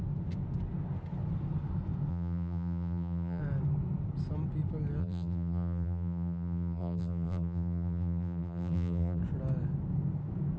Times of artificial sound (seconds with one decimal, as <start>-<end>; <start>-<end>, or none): 2.1-3.4; 5.0-9.2